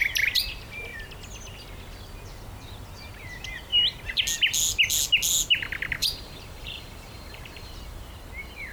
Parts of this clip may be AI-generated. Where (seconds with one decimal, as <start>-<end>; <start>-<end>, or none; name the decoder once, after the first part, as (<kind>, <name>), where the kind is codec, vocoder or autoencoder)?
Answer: 6.0-8.1 (vocoder, BigVGAN v2)